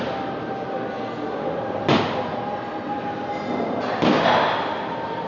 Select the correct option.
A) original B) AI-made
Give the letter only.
A